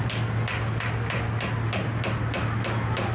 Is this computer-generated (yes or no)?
no